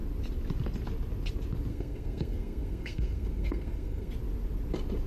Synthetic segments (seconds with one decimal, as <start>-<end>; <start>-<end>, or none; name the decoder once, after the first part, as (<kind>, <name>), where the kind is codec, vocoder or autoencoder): 1.7-4.1 (codec, SNAC)